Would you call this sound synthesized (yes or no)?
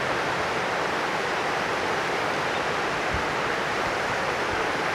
yes